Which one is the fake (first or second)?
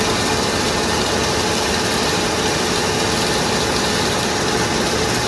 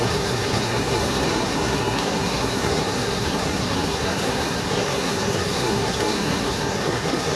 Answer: second